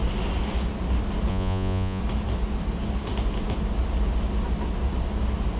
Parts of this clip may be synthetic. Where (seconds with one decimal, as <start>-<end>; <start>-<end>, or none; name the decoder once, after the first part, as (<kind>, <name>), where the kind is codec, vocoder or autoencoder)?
1.3-2.0 (vocoder, Vocos)